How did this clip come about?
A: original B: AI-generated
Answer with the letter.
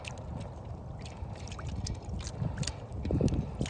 A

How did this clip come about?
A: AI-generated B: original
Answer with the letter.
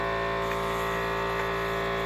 B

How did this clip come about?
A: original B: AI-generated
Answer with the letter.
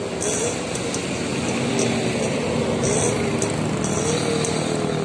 A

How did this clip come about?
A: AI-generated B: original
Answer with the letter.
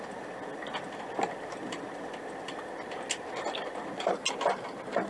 B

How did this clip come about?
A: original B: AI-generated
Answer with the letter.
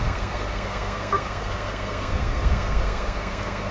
B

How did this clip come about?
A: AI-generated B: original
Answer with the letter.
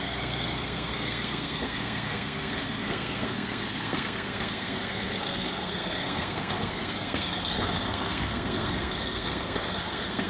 A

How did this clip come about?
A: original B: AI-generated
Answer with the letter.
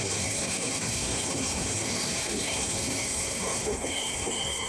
B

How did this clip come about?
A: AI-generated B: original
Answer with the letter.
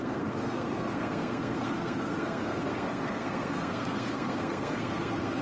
A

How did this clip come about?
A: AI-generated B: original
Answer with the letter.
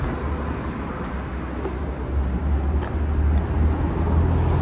B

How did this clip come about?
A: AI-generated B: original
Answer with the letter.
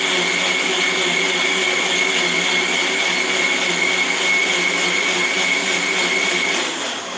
B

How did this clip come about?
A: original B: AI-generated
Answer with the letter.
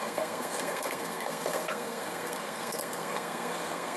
B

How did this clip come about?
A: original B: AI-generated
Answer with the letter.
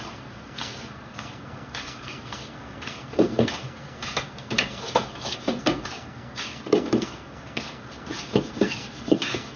B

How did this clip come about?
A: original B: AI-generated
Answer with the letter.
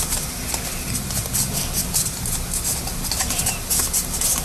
A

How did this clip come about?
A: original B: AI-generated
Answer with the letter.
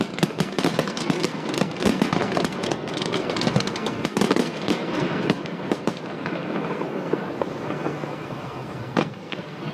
B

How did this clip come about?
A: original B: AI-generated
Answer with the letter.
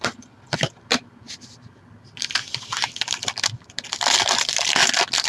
A